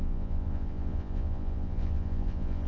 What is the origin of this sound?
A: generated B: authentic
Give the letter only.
A